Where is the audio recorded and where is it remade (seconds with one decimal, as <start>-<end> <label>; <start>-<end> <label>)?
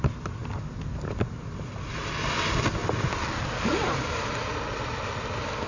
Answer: 0.0-5.7 recorded